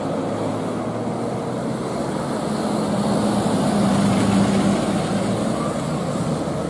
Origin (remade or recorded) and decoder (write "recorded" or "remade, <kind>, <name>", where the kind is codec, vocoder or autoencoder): recorded